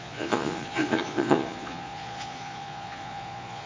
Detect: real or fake fake